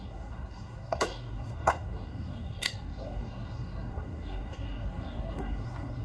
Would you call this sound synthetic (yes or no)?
yes